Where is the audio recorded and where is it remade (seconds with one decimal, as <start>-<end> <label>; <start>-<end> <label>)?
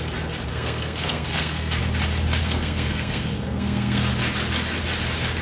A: 0.0-0.5 recorded; 0.5-1.8 remade; 1.8-2.4 recorded; 2.4-4.1 remade; 4.1-5.4 recorded